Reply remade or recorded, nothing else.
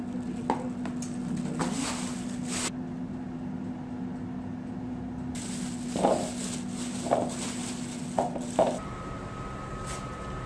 recorded